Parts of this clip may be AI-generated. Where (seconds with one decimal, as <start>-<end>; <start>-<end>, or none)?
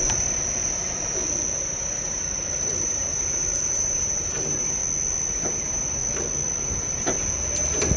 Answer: 0.0-1.2; 2.4-4.8; 5.3-6.0; 6.6-8.0